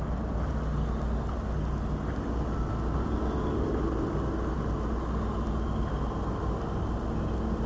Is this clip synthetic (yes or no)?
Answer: no